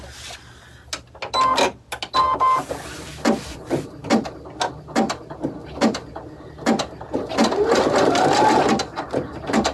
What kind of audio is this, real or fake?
real